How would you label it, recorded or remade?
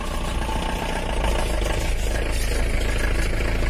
recorded